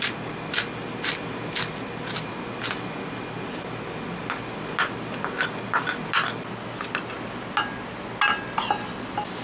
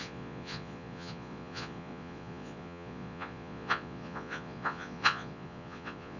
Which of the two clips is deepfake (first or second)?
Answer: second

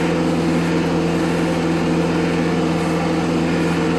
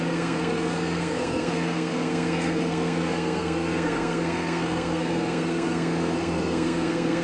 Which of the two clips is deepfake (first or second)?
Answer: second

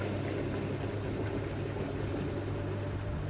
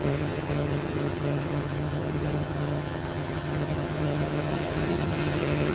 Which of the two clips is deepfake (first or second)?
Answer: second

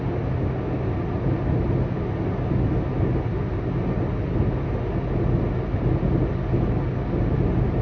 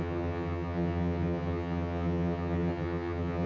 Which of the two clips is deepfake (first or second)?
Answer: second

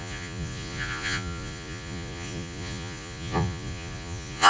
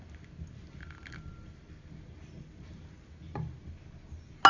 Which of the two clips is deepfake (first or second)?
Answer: first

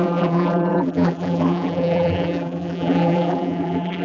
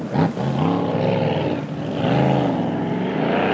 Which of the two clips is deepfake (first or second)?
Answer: first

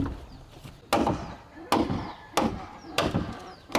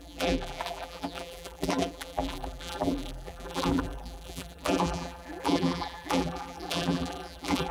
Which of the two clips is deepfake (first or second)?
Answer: second